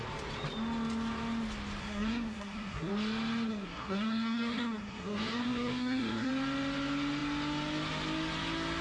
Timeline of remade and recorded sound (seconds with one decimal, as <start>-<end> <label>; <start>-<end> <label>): 0.0-1.8 recorded; 1.8-2.9 remade; 2.9-3.5 recorded; 3.5-6.3 remade; 6.3-8.8 recorded